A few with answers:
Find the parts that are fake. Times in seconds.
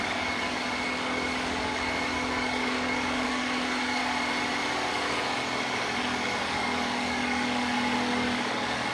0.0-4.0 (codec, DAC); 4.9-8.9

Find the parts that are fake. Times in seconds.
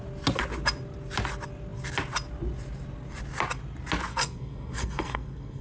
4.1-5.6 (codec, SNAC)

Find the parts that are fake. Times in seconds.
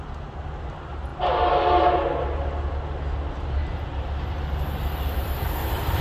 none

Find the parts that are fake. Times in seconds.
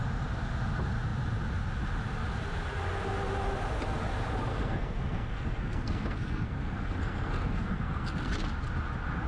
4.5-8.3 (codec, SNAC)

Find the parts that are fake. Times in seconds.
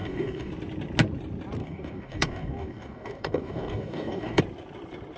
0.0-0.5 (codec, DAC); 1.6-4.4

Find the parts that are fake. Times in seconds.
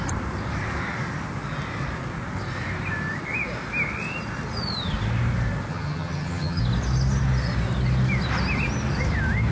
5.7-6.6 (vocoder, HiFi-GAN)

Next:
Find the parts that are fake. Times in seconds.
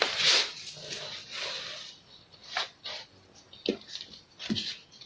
none